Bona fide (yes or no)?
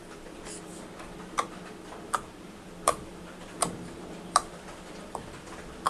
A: no